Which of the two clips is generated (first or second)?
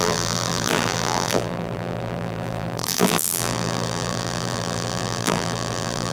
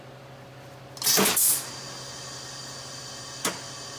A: first